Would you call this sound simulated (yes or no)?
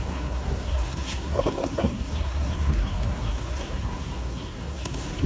yes